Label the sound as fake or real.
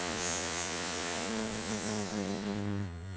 fake